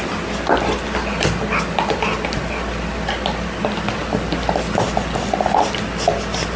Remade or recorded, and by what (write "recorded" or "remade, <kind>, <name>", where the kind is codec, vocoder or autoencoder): recorded